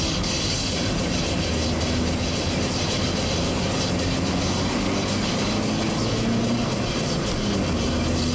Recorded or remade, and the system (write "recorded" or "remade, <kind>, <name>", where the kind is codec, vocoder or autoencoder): recorded